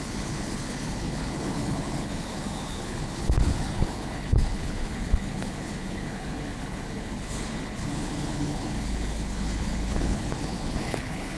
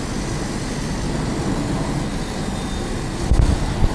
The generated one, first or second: first